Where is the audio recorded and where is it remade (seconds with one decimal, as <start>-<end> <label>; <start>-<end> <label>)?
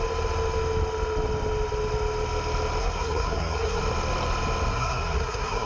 0.0-2.8 recorded; 2.8-3.8 remade; 3.8-4.7 recorded; 4.7-5.7 remade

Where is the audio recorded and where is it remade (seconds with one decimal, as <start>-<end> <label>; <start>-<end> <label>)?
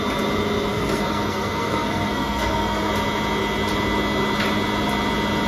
0.0-0.7 recorded; 0.7-2.9 remade; 2.9-5.5 recorded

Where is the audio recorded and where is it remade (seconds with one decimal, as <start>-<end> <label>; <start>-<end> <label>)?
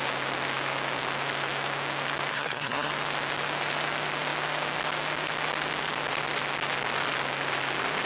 0.0-2.3 recorded; 2.3-2.9 remade; 2.9-8.1 recorded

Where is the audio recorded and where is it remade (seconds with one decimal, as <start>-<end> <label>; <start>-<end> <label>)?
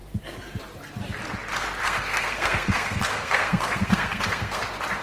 0.0-1.8 recorded; 1.8-4.6 remade; 4.6-5.0 recorded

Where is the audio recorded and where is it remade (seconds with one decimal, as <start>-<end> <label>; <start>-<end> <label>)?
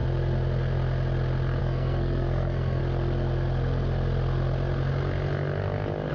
0.0-1.6 recorded; 1.6-2.8 remade; 2.8-6.1 recorded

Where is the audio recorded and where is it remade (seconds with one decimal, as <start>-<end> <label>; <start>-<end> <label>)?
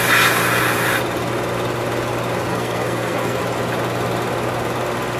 0.0-2.5 recorded; 2.5-3.4 remade; 3.4-5.2 recorded